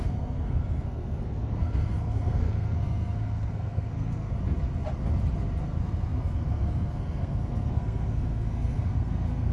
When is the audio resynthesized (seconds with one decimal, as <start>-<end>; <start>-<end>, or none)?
0.0-4.3; 5.6-9.5